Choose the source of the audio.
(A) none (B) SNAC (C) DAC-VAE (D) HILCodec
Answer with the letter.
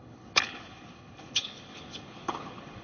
D